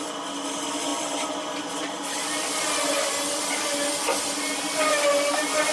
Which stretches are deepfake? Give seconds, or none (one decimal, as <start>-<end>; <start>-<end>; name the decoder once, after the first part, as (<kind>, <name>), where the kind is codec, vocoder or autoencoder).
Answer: none